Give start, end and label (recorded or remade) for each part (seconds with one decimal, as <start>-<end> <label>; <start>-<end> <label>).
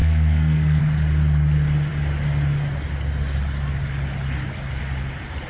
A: 0.0-0.8 remade; 0.8-5.5 recorded